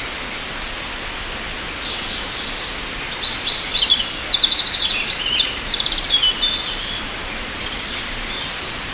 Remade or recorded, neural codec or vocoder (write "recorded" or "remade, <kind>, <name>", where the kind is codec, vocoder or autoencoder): recorded